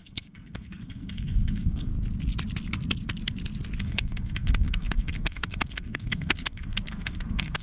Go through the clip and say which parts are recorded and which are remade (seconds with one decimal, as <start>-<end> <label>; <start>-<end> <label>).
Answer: 0.0-1.9 remade; 1.9-3.8 recorded; 3.8-7.6 remade